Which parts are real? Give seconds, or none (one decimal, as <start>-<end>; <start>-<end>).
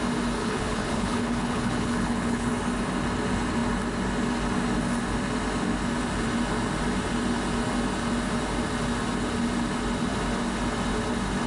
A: 0.0-0.4; 2.5-11.5